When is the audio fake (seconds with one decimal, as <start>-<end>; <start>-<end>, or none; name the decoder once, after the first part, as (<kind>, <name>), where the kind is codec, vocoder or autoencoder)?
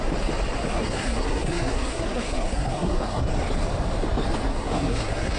0.7-3.2 (codec, SNAC); 4.5-5.4